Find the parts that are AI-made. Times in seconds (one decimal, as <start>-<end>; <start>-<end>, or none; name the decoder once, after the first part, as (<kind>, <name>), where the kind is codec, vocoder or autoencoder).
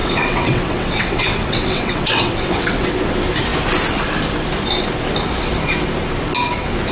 0.0-2.9 (vocoder, WaveNeXt)